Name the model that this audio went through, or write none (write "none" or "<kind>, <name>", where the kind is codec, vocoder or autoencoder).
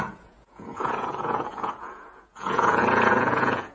vocoder, Vocos